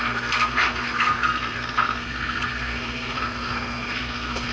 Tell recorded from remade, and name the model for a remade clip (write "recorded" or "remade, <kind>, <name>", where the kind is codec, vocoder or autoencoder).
remade, codec, SNAC